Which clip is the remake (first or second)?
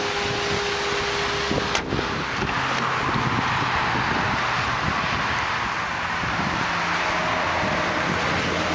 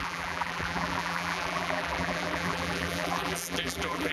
second